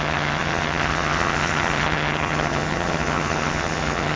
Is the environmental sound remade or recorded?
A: remade